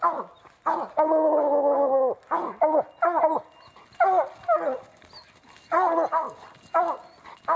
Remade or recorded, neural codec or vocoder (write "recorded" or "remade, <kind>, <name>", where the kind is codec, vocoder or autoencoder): recorded